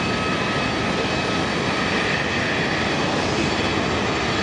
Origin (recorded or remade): recorded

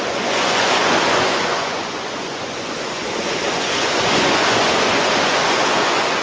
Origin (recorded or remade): remade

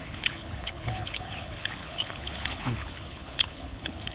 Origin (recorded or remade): remade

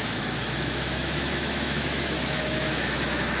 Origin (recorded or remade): remade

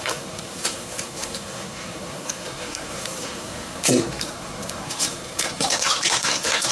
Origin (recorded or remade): remade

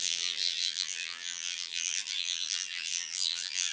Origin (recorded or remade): remade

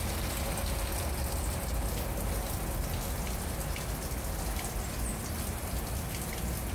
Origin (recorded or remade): recorded